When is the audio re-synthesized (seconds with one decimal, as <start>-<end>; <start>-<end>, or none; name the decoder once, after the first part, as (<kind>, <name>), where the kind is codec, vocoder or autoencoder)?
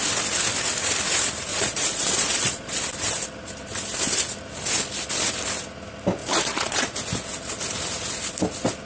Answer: 1.5-2.8 (vocoder, Vocos); 6.2-7.0